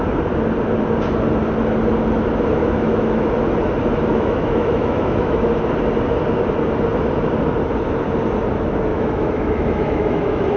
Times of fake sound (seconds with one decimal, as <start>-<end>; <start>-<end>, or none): 2.6-3.3; 4.1-5.5; 8.9-10.6